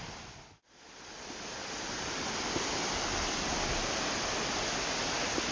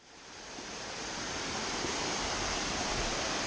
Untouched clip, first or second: first